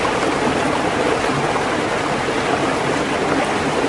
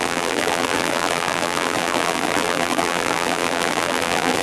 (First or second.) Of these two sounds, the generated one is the second